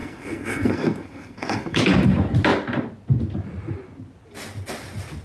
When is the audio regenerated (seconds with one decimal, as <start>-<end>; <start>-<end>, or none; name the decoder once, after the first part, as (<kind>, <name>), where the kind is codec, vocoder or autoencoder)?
0.0-1.8 (codec, SNAC)